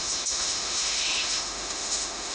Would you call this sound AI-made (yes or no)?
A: yes